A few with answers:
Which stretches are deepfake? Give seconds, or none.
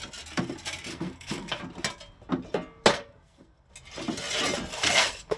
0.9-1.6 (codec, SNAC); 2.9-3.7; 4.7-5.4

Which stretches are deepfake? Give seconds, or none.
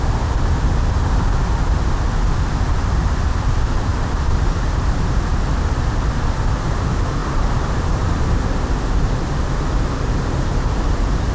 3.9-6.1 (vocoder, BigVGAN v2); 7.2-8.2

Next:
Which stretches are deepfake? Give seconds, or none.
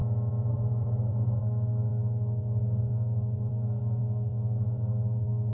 0.5-5.5 (codec, SNAC)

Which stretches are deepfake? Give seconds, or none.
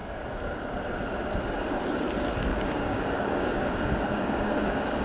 2.5-5.0 (codec, DAC)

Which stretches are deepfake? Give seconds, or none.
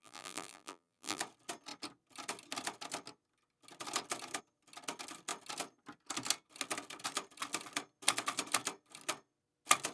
0.0-1.2 (vocoder, BigVGAN v2)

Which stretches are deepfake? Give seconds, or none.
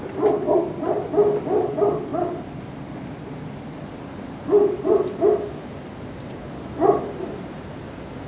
none